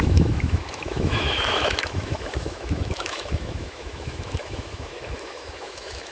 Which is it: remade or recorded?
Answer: remade